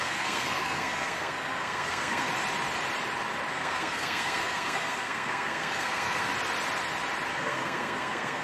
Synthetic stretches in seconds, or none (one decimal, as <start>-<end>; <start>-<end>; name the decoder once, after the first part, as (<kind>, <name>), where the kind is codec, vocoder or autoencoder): 0.0-2.3 (codec, SNAC); 3.5-6.3; 7.3-8.4